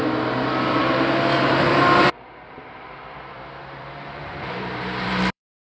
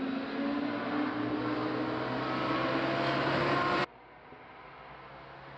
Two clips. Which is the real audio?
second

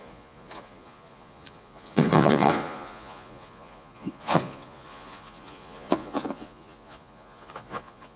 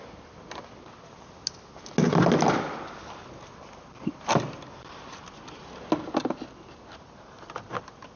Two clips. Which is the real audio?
second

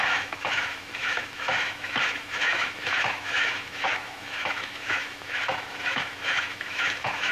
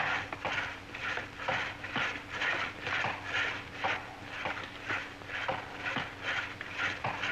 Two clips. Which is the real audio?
second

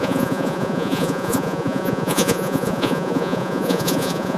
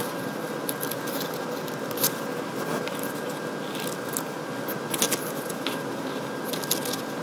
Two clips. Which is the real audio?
second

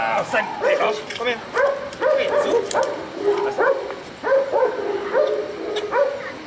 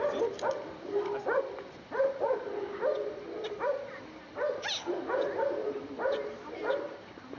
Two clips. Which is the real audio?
first